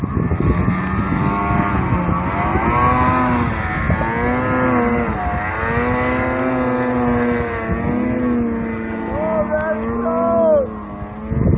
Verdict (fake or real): real